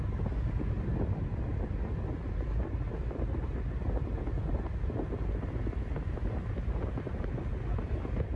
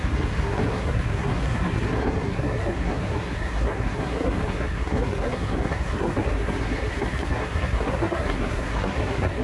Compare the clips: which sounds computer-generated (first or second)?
second